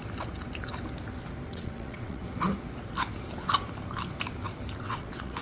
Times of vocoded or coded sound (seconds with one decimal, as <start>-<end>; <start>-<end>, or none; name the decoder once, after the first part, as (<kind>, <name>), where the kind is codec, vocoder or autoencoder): 1.5-2.2 (vocoder, WaveNeXt); 4.8-5.4

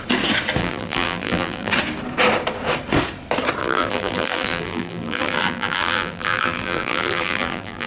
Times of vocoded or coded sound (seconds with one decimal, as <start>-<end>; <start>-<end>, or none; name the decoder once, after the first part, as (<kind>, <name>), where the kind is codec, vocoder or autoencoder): 0.6-1.7 (vocoder, BigVGAN v2); 3.6-7.9

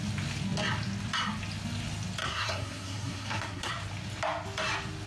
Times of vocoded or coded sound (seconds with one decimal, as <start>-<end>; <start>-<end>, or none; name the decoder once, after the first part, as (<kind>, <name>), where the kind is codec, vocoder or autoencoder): 2.2-3.7 (codec, SNAC)

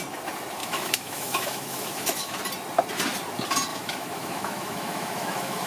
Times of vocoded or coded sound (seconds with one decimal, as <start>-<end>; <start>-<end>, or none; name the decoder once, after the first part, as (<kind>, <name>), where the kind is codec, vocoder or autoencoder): 0.6-2.4 (autoencoder, DAC-VAE); 3.7-5.7

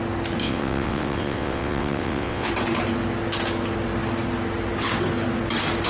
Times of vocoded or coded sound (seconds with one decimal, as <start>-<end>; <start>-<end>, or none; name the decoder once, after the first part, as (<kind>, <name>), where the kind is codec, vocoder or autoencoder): 0.4-2.5 (vocoder, WaveNeXt)